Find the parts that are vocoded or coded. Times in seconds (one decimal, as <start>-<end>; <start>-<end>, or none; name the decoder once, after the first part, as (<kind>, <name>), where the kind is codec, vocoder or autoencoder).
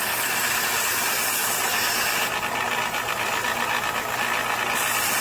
none